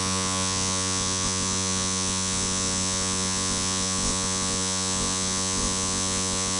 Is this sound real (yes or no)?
no